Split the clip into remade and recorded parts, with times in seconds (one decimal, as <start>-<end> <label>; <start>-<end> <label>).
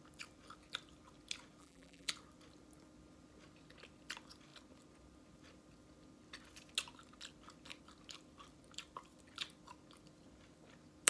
0.0-1.6 recorded; 1.6-2.1 remade; 2.1-11.1 recorded